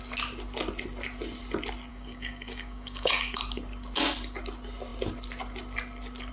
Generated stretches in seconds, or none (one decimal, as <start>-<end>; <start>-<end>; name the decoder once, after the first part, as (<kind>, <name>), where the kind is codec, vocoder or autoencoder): 1.9-3.4 (codec, DAC)